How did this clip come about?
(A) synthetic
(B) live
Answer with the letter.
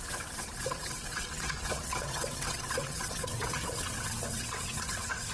A